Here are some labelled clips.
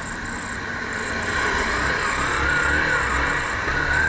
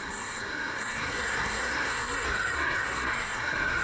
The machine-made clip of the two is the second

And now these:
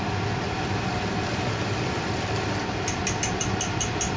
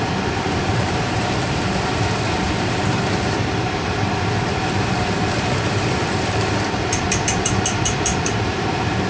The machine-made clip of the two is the second